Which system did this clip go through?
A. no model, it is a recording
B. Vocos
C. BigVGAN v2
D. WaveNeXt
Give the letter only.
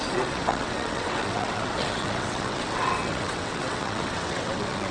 D